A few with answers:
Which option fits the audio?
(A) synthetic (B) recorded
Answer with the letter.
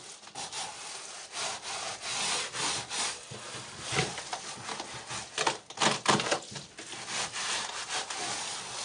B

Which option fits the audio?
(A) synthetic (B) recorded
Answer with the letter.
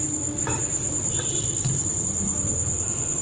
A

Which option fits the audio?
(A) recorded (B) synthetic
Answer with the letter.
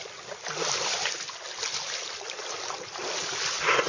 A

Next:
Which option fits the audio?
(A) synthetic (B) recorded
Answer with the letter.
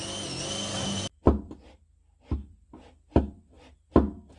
B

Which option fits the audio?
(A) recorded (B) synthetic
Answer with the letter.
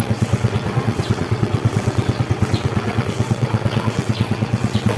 B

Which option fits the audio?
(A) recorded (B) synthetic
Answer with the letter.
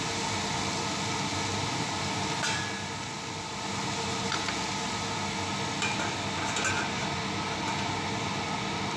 A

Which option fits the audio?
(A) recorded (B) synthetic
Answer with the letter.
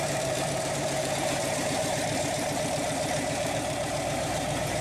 B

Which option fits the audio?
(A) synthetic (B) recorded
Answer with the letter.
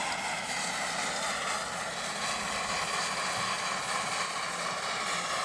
B